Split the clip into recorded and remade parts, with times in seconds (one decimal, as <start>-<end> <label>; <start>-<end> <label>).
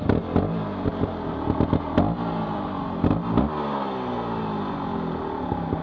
0.0-5.8 recorded